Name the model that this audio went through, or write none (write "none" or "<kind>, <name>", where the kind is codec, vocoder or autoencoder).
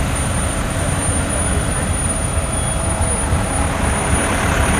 vocoder, BigVGAN v2